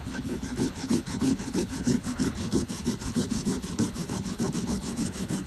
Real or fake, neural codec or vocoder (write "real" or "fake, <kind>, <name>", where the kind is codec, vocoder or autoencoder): fake, codec, HILCodec